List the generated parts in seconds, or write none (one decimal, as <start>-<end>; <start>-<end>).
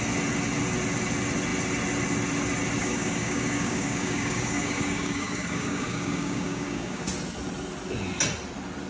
2.8-7.0